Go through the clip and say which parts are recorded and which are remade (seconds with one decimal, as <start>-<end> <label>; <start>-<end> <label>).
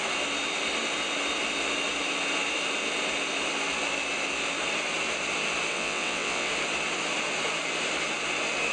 0.0-5.7 recorded; 5.7-6.5 remade; 6.5-8.7 recorded